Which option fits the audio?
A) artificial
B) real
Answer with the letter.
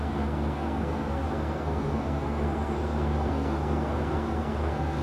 A